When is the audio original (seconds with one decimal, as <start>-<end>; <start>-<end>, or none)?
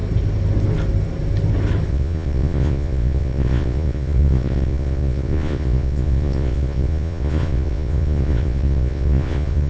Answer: 0.0-1.9